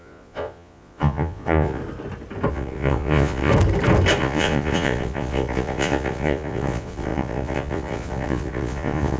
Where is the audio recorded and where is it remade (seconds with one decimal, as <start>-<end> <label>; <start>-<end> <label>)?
0.0-1.8 remade; 1.8-2.5 recorded; 2.5-3.5 remade; 3.5-4.2 recorded; 4.2-9.2 remade